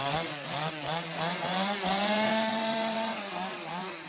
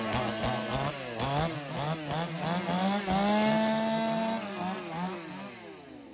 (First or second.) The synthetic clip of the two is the first